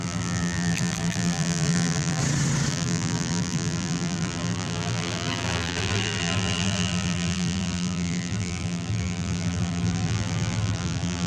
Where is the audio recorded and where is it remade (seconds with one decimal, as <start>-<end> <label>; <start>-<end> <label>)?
0.0-2.2 remade; 2.2-2.7 recorded; 2.7-11.3 remade